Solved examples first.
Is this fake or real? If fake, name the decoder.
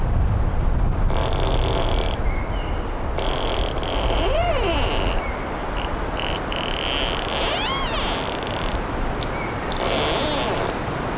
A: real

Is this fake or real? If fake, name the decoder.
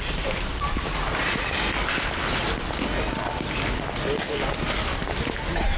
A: real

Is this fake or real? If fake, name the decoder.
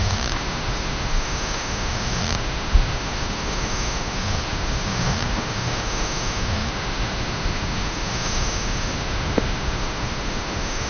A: fake, autoencoder, DAC-VAE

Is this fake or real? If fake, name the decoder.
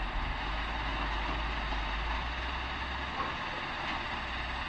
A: real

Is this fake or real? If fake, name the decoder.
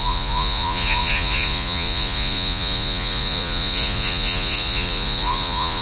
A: fake, vocoder, Vocos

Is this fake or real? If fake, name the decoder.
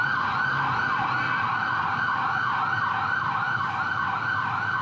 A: real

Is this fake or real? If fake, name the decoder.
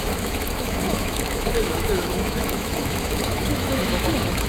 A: fake, autoencoder, DAC-VAE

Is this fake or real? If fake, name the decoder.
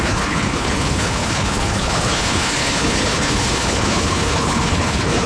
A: fake, codec, HILCodec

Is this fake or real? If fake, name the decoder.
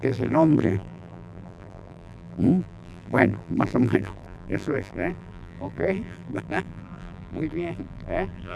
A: fake, vocoder, BigVGAN v2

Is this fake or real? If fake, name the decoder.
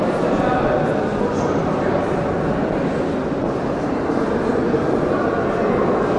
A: real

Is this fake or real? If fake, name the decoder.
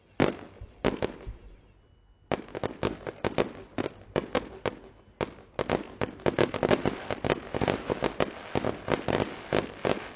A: real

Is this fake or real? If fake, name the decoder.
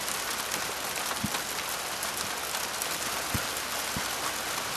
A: real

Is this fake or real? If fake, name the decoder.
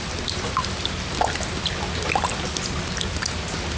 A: real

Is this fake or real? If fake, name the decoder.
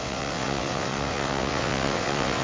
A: fake, vocoder, WaveNeXt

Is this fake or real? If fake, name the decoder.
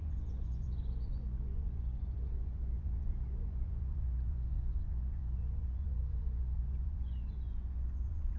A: fake, vocoder, Vocos